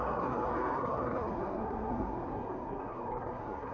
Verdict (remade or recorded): remade